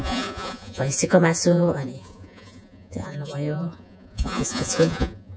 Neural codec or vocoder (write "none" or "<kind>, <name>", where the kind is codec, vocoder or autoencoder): vocoder, Vocos